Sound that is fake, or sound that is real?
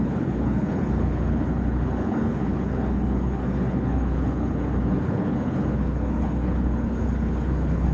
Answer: fake